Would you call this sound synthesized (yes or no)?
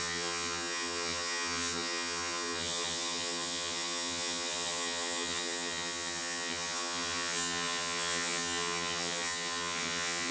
yes